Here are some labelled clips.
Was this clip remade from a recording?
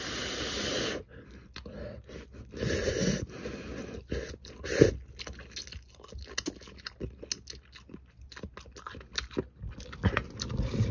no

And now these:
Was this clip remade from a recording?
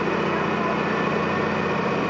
no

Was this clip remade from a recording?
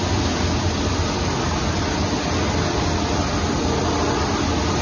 no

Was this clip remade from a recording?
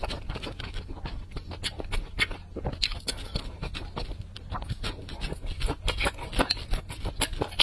no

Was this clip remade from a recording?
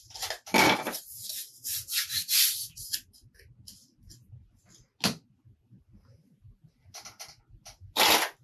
no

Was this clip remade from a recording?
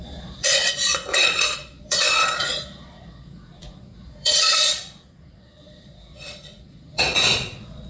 yes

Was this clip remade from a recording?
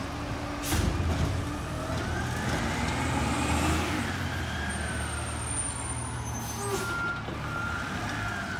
no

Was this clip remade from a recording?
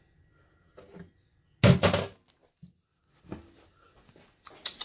no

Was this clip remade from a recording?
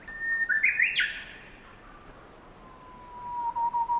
no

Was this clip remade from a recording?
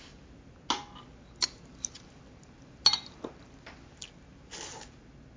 no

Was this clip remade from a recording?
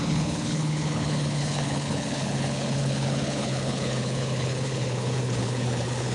yes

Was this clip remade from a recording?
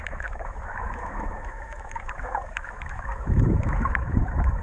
yes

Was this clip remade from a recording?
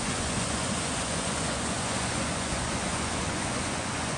yes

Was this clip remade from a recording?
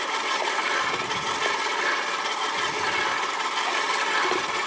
no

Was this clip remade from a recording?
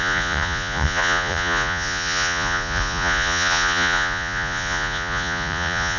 yes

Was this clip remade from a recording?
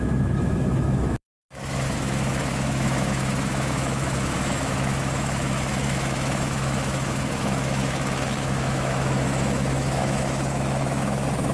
yes